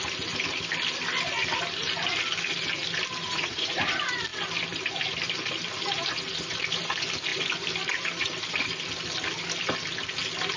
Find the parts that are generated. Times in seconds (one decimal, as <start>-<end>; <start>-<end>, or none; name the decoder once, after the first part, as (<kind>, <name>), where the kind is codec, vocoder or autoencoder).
3.2-3.8 (vocoder, Vocos)